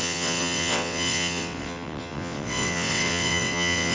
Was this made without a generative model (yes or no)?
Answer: no